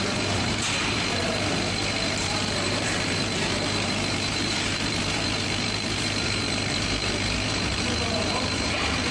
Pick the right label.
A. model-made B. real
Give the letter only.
A